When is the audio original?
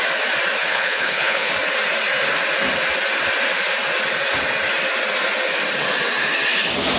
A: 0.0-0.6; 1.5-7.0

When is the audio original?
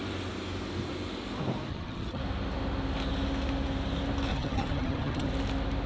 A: 0.0-1.7; 2.2-4.3; 5.3-5.9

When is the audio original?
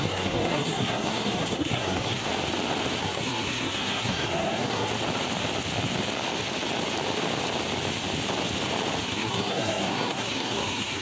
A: 2.3-3.0; 4.9-9.0